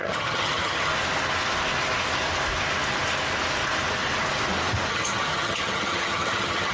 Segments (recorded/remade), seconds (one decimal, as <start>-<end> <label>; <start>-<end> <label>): 0.0-0.9 remade; 0.9-4.9 recorded; 4.9-6.7 remade